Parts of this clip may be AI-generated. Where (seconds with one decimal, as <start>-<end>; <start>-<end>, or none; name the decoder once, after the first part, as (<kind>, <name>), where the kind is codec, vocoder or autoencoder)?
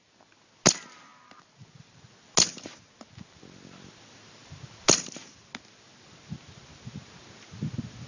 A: none